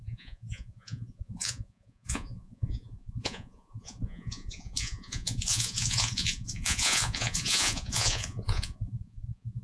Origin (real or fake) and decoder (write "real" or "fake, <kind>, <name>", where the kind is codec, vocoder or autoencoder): fake, vocoder, Vocos